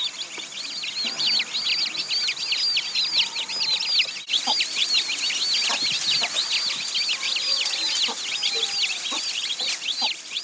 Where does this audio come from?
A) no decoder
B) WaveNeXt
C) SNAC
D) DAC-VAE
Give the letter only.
A